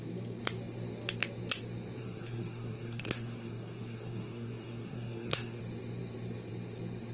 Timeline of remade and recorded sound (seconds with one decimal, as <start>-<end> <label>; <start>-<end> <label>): 0.0-2.0 recorded; 2.0-5.6 remade; 5.6-7.1 recorded